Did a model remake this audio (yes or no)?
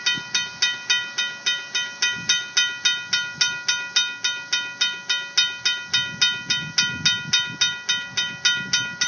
no